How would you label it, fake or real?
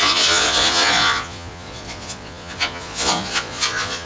fake